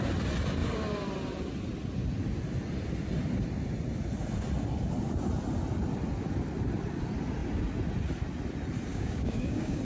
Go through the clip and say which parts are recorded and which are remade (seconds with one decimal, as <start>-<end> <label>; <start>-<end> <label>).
0.0-8.9 recorded; 8.9-9.8 remade